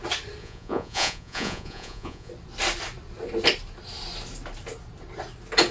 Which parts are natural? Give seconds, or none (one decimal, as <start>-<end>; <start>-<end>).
0.0-0.4; 2.3-5.7

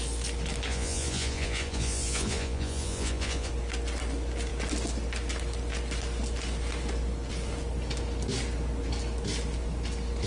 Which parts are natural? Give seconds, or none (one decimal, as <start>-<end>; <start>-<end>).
0.0-0.7; 3.5-10.3